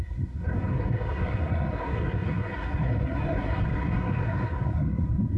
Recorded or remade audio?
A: remade